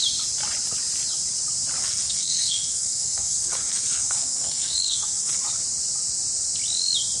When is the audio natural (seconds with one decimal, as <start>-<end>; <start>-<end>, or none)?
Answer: 0.0-1.8; 5.4-7.2